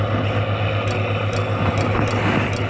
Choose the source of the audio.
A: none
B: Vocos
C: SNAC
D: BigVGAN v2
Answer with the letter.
A